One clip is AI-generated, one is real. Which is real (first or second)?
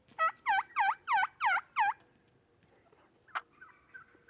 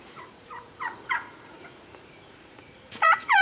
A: first